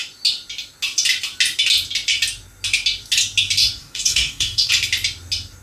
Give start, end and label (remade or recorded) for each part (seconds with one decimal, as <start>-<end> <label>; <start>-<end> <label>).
0.0-3.8 recorded; 3.8-4.7 remade; 4.7-5.6 recorded